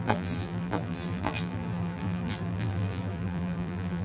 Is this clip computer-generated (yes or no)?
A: yes